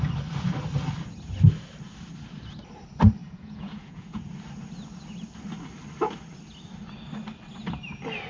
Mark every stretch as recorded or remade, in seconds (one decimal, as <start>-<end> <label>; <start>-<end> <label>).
0.0-3.2 recorded; 3.2-4.3 remade; 4.3-8.3 recorded